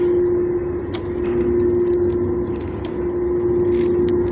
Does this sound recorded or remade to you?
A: recorded